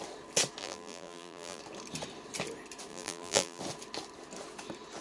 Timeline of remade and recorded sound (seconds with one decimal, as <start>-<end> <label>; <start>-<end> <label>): 0.0-0.6 recorded; 0.6-1.6 remade; 1.6-2.9 recorded; 2.9-3.6 remade; 3.6-5.0 recorded